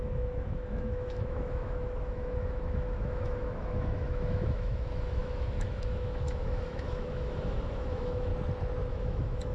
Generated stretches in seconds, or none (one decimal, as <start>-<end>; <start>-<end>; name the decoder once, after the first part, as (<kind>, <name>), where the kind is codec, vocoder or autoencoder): 0.0-8.3 (autoencoder, DAC-VAE); 8.9-9.5